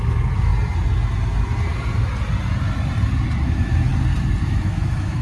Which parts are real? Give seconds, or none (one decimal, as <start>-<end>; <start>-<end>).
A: 0.5-3.4; 3.9-4.4